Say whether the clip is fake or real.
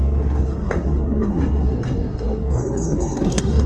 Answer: fake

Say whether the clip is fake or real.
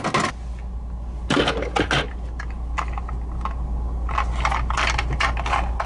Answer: real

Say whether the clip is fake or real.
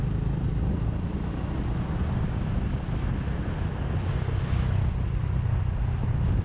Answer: real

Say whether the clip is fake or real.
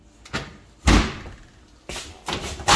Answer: real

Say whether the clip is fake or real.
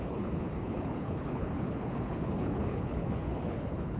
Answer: fake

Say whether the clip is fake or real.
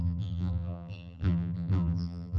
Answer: fake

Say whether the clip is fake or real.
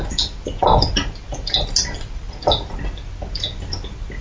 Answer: real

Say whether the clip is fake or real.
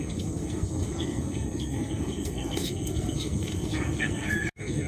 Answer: fake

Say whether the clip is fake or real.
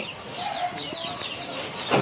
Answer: real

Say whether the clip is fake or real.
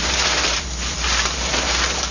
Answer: fake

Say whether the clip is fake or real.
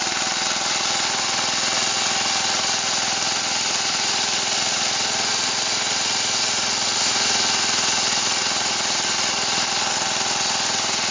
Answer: real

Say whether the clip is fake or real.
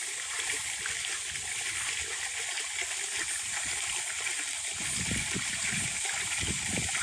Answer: real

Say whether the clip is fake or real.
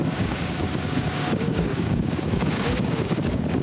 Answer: fake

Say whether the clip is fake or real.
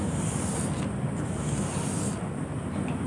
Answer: real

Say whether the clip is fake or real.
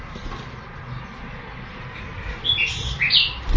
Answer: real